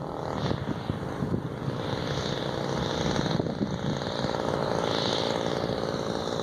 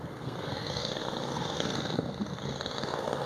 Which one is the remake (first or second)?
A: second